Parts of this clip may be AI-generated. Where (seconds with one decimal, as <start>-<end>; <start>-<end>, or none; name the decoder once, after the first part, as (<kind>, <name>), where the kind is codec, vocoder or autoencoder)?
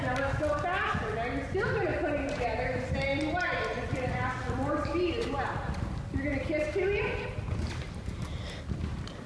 none